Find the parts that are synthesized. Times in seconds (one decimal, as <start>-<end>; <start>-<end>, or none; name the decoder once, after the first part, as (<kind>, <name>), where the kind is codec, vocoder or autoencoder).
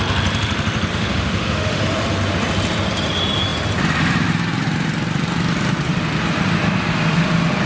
0.9-1.8 (autoencoder, DAC-VAE)